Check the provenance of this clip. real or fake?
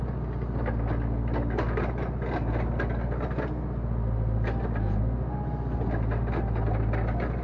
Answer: real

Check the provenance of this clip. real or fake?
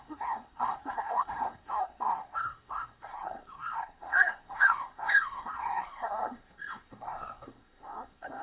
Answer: fake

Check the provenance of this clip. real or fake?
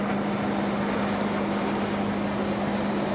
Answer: real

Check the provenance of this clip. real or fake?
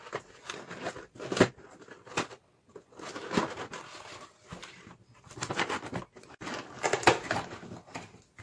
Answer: real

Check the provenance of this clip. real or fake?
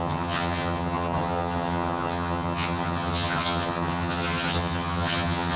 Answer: fake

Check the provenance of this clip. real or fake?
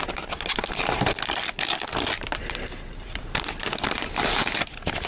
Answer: fake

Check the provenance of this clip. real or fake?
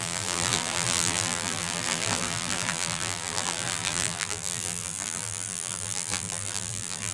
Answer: fake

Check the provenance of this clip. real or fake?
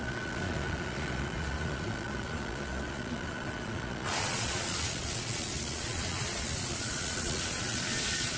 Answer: fake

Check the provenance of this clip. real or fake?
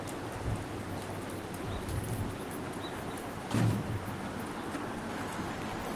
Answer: real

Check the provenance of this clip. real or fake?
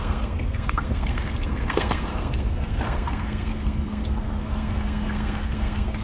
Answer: fake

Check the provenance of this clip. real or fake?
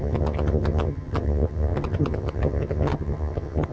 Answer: fake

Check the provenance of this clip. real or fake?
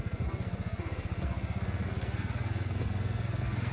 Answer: fake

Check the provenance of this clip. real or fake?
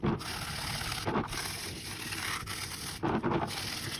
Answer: real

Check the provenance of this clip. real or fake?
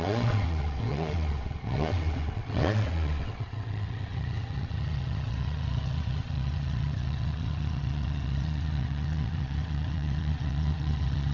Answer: fake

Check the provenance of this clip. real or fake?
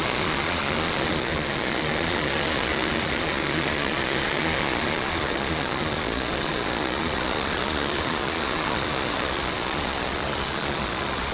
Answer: fake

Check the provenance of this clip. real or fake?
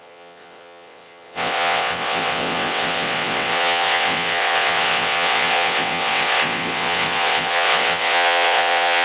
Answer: fake